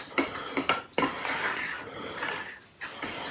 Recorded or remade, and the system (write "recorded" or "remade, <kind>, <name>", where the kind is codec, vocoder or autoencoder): recorded